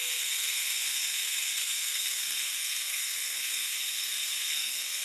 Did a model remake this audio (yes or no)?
yes